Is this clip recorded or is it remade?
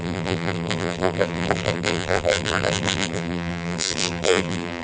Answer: remade